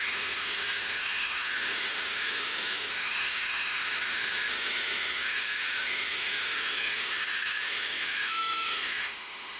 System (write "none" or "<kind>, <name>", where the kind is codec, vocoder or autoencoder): autoencoder, DAC-VAE